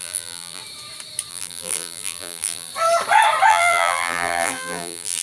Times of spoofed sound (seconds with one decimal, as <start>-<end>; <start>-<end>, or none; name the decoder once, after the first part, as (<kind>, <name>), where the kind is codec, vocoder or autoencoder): 0.0-0.6 (vocoder, BigVGAN v2); 1.3-2.7; 3.5-5.2